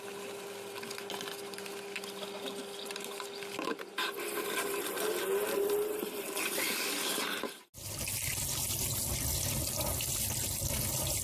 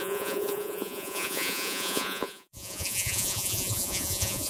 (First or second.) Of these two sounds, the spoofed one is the second